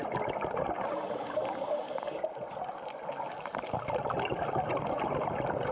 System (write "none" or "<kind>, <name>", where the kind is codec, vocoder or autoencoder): none